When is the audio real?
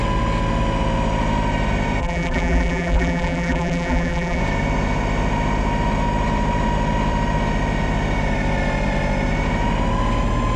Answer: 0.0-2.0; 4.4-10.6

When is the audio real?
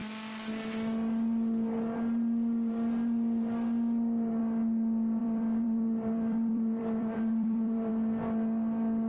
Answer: 0.0-5.2; 7.9-9.1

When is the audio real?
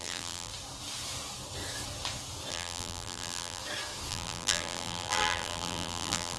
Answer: 0.5-2.5; 3.6-4.1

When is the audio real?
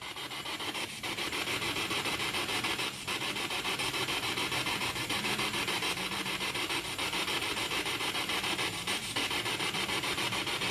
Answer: 2.5-3.1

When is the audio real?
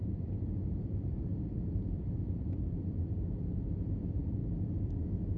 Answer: 4.4-5.4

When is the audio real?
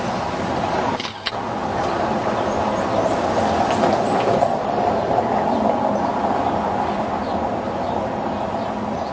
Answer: 0.0-1.6; 2.2-3.9; 7.1-9.1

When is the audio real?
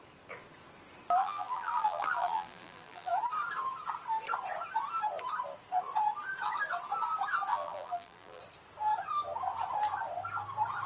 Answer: 0.0-1.2; 3.1-7.5; 8.4-10.9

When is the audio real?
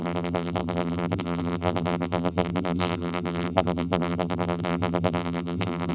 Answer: none